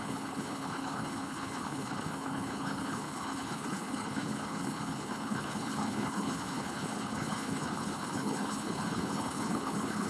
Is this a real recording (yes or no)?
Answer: no